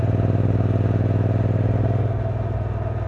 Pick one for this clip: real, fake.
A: real